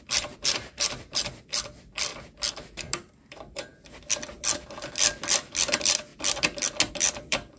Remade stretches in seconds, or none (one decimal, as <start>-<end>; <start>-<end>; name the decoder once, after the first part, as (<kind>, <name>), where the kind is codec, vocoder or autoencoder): 0.0-2.1 (vocoder, BigVGAN v2); 3.1-3.7; 5.2-6.1; 6.9-7.6